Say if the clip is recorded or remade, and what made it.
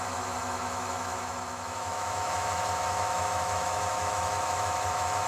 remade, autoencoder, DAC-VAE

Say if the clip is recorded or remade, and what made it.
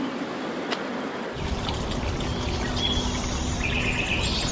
recorded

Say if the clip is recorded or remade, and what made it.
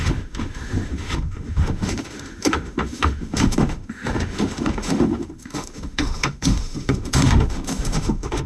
remade, autoencoder, DAC-VAE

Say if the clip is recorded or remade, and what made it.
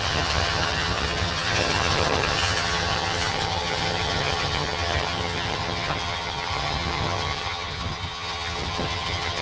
remade, vocoder, HiFi-GAN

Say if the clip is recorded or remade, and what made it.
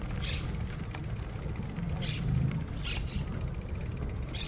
recorded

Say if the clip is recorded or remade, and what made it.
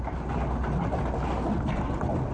recorded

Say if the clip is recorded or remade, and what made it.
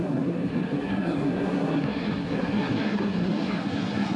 remade, codec, SNAC